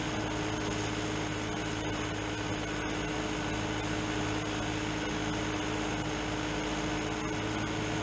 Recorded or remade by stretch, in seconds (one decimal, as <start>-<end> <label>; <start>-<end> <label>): 0.0-8.0 recorded